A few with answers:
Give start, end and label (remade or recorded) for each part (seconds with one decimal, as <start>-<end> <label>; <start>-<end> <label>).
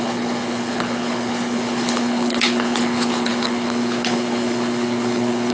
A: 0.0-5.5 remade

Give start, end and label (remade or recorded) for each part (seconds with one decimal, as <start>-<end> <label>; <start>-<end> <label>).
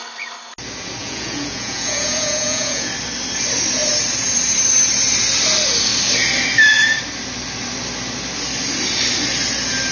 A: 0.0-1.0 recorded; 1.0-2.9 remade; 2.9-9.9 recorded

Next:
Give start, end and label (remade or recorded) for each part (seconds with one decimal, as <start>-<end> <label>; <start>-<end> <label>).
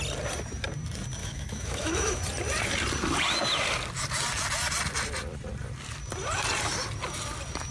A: 0.0-1.2 recorded; 1.2-2.2 remade; 2.2-7.7 recorded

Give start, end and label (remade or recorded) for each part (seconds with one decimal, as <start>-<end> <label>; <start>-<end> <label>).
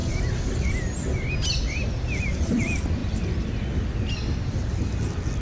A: 0.0-5.4 recorded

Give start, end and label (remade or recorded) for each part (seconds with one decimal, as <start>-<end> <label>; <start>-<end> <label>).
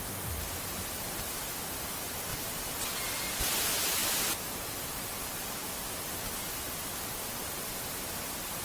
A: 0.0-8.6 recorded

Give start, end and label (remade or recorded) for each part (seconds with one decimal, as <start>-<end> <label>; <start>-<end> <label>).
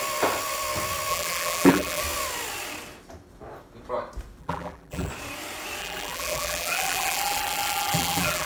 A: 0.0-1.1 recorded; 1.1-2.0 remade; 2.0-4.4 recorded; 4.4-5.1 remade; 5.1-5.8 recorded; 5.8-8.5 remade